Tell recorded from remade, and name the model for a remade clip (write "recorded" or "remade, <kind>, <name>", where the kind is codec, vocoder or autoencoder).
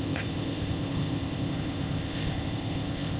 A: remade, codec, ZipCodec